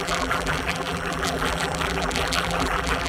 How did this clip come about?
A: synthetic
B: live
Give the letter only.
A